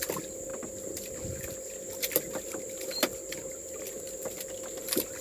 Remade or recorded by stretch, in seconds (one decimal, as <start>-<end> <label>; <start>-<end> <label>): 0.0-5.2 recorded